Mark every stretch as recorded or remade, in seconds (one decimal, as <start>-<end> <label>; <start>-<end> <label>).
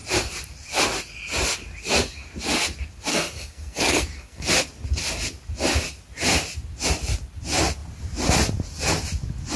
0.0-3.1 recorded; 3.1-4.5 remade; 4.5-9.6 recorded